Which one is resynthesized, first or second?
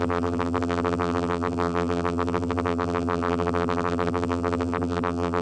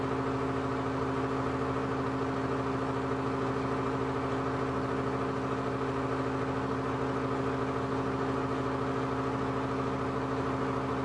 first